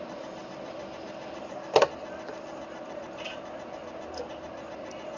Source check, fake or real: real